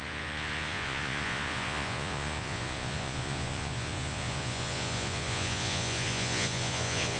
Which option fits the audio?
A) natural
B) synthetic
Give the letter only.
B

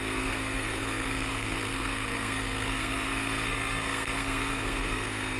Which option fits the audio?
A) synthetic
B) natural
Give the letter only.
A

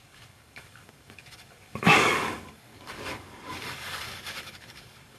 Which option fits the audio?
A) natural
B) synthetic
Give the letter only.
B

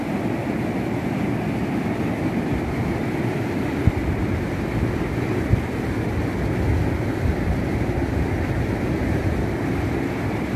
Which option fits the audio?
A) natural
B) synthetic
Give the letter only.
A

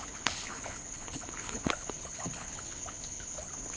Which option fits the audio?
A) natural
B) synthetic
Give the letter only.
B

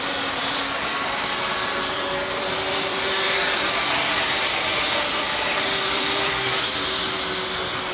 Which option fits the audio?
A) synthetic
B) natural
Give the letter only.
A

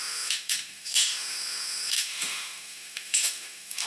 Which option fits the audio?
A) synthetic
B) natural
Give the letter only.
A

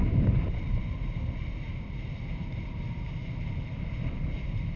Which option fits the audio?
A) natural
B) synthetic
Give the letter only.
B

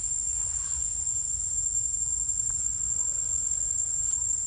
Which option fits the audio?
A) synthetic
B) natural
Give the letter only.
B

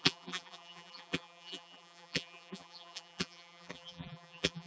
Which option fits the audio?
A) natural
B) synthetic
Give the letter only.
B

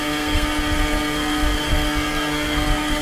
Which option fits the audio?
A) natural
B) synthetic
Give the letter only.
B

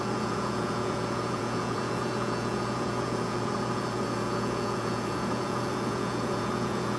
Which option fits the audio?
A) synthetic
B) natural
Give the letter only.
A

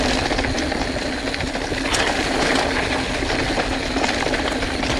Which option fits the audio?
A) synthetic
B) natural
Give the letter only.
B